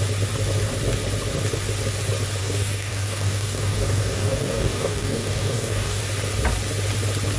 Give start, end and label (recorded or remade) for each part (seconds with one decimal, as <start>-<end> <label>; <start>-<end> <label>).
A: 0.0-2.4 recorded; 2.4-6.0 remade; 6.0-7.4 recorded